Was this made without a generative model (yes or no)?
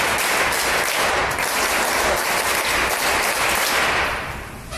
yes